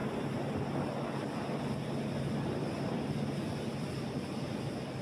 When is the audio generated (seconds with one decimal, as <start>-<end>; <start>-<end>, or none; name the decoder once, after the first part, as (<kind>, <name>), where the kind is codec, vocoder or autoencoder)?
none